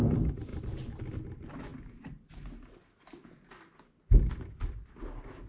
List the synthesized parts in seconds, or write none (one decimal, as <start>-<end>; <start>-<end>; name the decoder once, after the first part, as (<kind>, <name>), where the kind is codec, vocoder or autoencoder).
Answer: none